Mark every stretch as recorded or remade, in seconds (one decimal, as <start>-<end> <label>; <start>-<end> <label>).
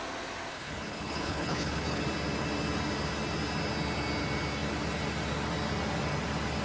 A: 0.0-0.5 recorded; 0.5-2.0 remade; 2.0-6.6 recorded